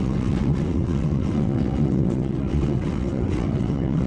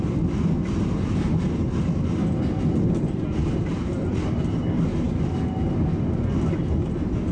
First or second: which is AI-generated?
first